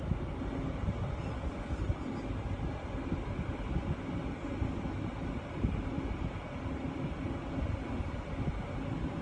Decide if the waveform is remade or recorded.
recorded